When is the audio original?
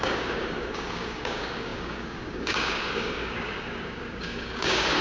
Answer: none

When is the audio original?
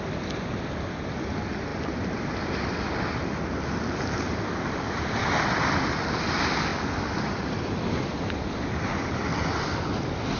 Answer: 0.0-10.4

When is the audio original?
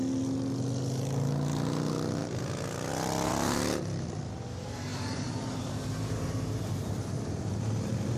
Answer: 0.0-3.3; 4.2-4.9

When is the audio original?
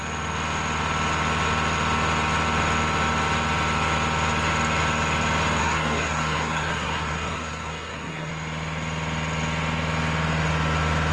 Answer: 0.0-5.6; 8.3-11.1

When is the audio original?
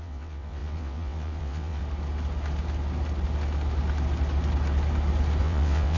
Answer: 1.8-5.4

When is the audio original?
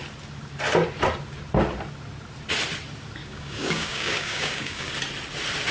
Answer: 0.0-3.2; 4.9-5.7